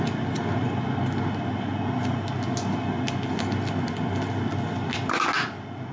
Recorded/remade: recorded